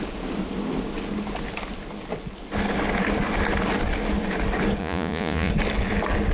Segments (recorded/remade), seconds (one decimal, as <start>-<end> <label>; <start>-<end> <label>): 0.0-4.8 recorded; 4.8-5.5 remade; 5.5-6.3 recorded